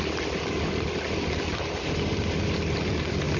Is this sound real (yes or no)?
yes